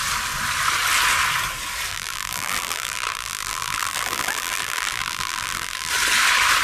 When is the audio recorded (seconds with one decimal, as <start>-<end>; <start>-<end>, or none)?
0.0-1.9; 5.9-6.6